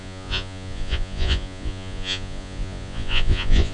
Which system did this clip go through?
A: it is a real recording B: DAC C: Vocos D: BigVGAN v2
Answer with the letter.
C